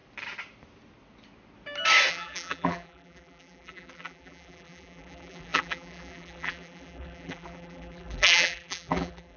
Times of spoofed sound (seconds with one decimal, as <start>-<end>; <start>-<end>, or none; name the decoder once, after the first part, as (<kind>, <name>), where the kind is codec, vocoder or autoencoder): 2.1-9.4 (vocoder, BigVGAN v2)